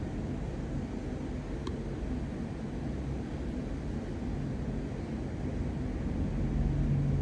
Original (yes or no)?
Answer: yes